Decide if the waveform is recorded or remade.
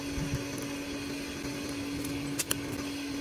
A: recorded